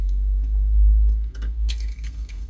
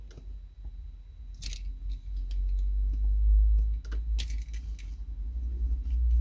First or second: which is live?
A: second